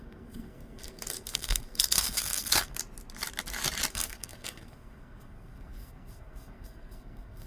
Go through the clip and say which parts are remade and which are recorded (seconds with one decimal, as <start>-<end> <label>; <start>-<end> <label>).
0.0-2.8 remade; 2.8-3.9 recorded; 3.9-7.5 remade